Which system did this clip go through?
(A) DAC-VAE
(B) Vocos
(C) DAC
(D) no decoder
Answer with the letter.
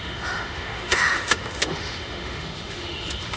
A